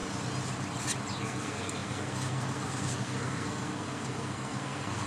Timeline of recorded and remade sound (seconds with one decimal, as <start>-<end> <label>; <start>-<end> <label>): 0.0-1.2 recorded; 1.2-5.1 remade